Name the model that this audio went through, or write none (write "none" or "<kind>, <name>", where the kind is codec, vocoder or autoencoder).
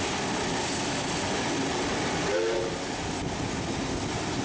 none